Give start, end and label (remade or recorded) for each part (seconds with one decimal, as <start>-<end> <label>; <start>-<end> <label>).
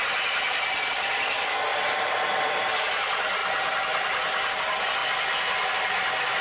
0.0-6.4 recorded